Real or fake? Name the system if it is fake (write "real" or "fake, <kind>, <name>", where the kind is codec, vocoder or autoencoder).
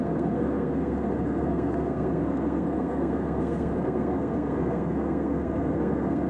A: fake, codec, SNAC